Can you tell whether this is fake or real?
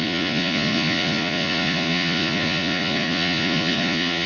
fake